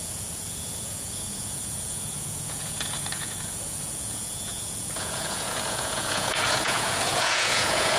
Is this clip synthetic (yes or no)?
yes